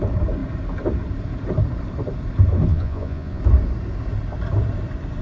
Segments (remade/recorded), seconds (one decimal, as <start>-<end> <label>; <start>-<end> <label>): 0.0-2.7 recorded; 2.7-3.4 remade; 3.4-5.2 recorded

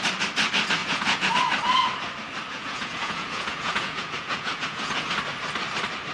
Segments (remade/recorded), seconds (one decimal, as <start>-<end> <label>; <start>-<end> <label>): 0.0-0.8 recorded; 0.8-1.3 remade; 1.3-2.5 recorded; 2.5-5.1 remade; 5.1-6.1 recorded

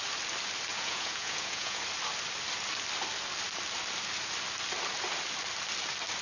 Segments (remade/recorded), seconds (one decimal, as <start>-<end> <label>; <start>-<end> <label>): 0.0-0.7 recorded; 0.7-1.8 remade; 1.8-6.2 recorded

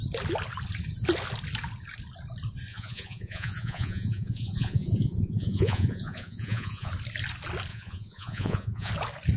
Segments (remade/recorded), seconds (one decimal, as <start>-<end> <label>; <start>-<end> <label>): 0.0-2.7 recorded; 2.7-6.9 remade; 6.9-7.7 recorded; 7.7-8.9 remade; 8.9-9.4 recorded

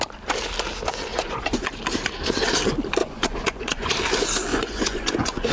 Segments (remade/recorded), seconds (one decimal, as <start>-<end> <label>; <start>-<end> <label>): 0.0-1.1 recorded; 1.1-1.7 remade; 1.7-3.0 recorded; 3.0-3.9 remade; 3.9-4.5 recorded; 4.5-5.5 remade

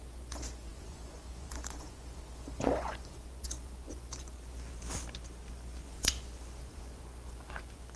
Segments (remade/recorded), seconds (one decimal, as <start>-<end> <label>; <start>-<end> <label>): 0.0-4.7 remade; 4.7-5.5 recorded; 5.5-8.0 remade

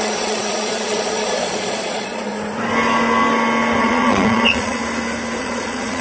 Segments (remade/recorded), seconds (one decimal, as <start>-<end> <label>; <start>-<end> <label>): 0.0-2.3 remade; 2.3-3.8 recorded; 3.8-4.8 remade; 4.8-5.4 recorded; 5.4-6.0 remade